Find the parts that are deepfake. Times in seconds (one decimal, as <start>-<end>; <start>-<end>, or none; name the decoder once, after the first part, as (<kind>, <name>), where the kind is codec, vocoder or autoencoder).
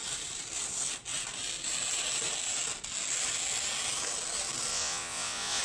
4.7-5.6 (vocoder, Vocos)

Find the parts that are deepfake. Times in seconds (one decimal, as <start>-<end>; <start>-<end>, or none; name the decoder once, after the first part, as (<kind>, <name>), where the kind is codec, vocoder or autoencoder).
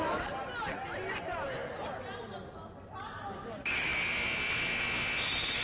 none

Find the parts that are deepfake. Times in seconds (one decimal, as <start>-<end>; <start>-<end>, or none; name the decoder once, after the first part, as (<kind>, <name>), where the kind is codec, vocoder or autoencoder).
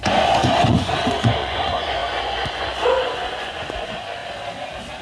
0.0-4.2 (vocoder, Vocos)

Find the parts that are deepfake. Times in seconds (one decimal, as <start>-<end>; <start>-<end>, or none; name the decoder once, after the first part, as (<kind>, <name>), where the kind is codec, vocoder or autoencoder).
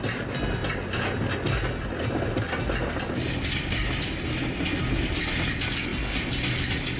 none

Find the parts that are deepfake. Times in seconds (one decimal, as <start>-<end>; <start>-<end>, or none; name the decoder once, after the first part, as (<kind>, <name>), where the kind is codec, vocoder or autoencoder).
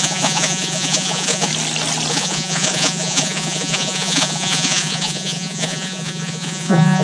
0.0-1.5 (vocoder, Vocos); 2.1-7.0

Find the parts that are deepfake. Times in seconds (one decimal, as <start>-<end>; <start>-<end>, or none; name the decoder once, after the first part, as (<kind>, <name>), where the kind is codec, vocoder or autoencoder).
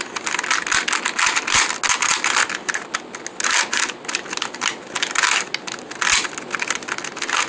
none